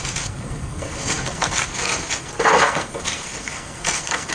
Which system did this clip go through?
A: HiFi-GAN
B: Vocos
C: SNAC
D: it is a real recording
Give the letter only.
C